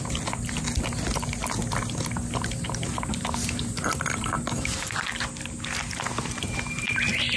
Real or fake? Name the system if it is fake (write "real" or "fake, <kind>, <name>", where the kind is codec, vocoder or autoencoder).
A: real